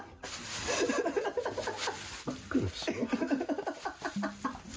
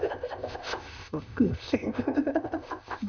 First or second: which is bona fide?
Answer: first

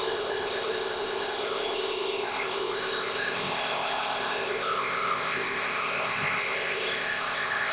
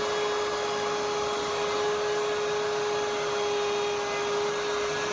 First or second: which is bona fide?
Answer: second